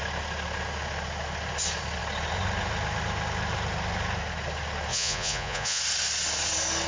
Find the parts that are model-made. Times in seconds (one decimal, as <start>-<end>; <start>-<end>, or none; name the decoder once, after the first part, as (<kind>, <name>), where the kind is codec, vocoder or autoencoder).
4.9-5.8 (vocoder, Vocos)

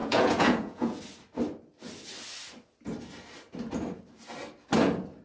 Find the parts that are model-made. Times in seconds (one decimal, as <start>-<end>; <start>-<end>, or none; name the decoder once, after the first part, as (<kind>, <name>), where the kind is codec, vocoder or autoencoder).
0.0-1.0 (vocoder, Vocos)

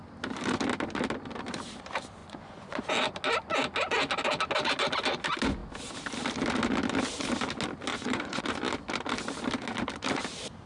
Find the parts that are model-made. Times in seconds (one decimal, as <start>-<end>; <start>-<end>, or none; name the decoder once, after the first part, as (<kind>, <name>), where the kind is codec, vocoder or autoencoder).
2.2-2.8 (vocoder, Vocos); 7.9-8.4

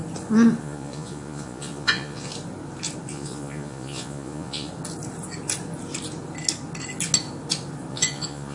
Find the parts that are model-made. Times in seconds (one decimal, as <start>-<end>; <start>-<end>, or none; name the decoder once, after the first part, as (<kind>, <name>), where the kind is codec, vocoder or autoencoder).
0.6-2.3 (vocoder, Vocos); 3.1-4.7; 7.9-8.5

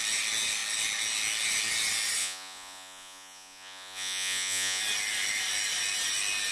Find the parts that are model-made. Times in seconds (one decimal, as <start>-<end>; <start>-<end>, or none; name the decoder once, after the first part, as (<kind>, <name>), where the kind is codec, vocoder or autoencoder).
2.2-4.8 (vocoder, Vocos)

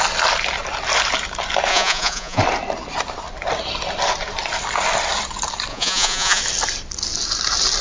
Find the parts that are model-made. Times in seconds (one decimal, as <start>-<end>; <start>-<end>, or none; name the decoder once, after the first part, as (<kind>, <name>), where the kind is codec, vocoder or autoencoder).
1.7-2.4 (vocoder, Vocos); 5.7-6.4